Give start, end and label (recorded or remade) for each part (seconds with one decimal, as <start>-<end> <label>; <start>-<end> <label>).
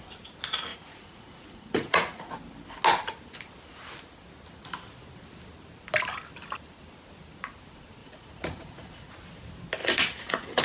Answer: 0.0-0.7 recorded; 0.7-2.3 remade; 2.3-8.0 recorded; 8.0-9.1 remade; 9.1-9.8 recorded; 9.8-10.6 remade